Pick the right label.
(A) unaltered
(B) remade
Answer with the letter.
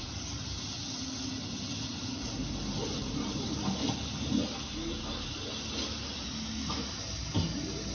A